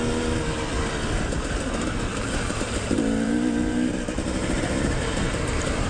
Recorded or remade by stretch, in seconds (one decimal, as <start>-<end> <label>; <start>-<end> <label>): 0.0-2.1 recorded; 2.1-5.9 remade